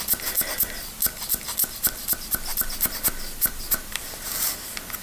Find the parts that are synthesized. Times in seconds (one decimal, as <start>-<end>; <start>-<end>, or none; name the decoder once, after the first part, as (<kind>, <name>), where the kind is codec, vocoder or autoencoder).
none